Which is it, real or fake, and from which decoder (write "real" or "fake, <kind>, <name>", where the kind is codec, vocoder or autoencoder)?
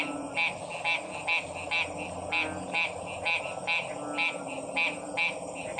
real